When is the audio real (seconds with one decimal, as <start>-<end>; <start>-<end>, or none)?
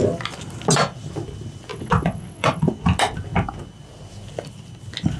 0.0-1.7; 2.7-5.2